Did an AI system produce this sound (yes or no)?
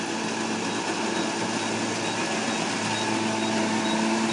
no